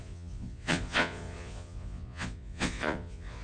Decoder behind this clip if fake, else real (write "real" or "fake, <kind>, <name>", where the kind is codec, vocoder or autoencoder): fake, vocoder, Vocos